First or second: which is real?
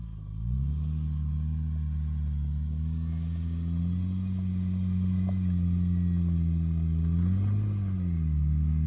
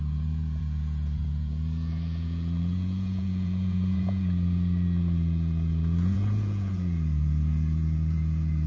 first